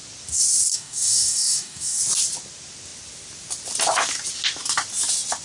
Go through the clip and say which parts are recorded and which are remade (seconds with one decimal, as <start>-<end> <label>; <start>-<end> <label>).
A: 0.0-0.7 recorded; 0.7-2.0 remade; 2.0-5.4 recorded

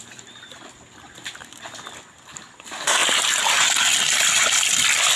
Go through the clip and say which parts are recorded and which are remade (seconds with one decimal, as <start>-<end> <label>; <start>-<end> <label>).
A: 0.0-5.2 recorded

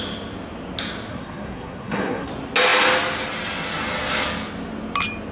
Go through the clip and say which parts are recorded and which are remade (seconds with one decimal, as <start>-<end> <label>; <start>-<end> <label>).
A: 0.0-1.1 recorded; 1.1-2.3 remade; 2.3-5.3 recorded

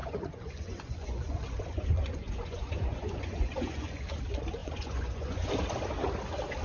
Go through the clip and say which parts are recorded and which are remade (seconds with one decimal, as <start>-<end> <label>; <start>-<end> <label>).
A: 0.0-4.0 remade; 4.0-4.6 recorded; 4.6-5.5 remade; 5.5-6.6 recorded